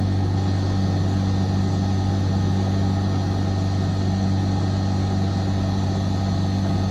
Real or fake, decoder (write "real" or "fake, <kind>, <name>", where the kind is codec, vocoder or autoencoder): real